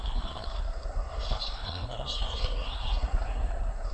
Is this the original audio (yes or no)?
no